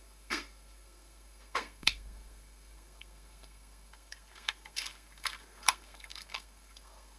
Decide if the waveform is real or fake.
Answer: fake